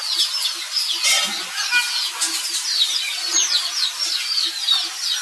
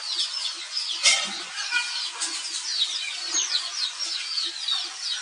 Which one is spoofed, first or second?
second